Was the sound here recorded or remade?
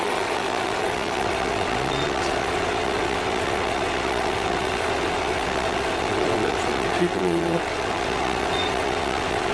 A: remade